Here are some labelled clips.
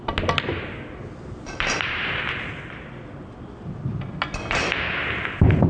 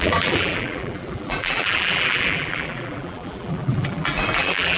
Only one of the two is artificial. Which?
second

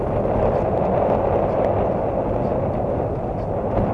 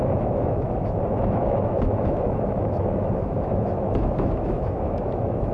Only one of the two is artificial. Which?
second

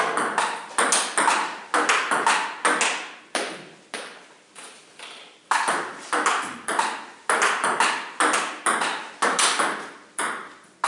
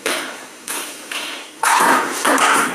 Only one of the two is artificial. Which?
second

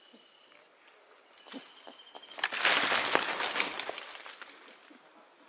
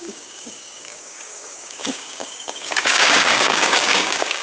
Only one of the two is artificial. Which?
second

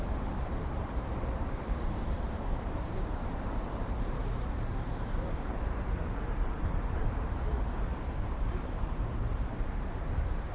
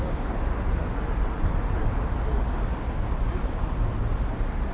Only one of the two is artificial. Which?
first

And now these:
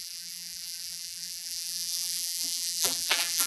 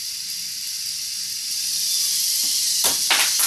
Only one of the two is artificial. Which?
first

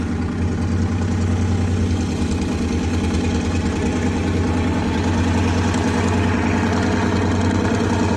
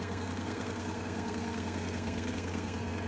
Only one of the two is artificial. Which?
second